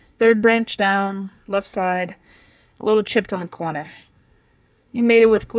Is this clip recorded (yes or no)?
no